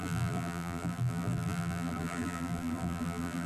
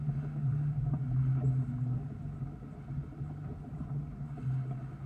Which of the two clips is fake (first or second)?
first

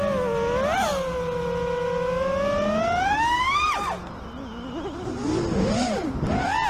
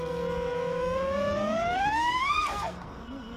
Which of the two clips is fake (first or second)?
second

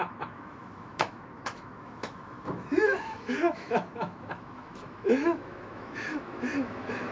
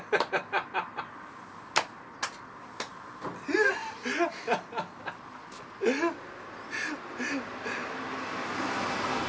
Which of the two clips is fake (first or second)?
first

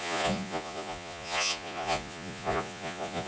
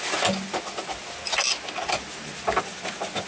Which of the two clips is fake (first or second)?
first